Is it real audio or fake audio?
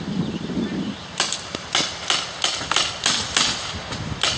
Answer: real